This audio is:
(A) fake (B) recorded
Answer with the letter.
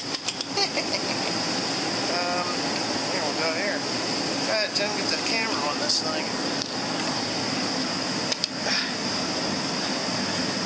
B